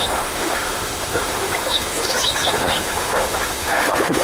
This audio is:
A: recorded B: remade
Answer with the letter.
B